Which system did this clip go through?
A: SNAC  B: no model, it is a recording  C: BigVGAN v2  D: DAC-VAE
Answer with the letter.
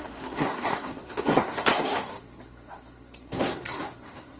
A